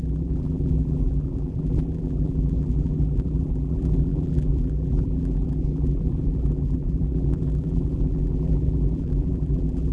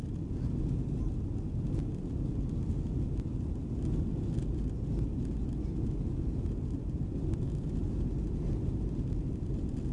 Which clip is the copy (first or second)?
first